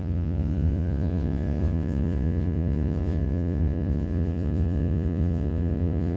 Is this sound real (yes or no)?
no